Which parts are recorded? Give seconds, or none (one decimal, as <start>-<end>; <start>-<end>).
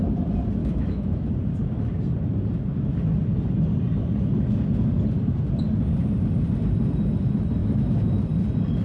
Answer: 0.0-0.6; 1.3-7.6; 8.2-8.8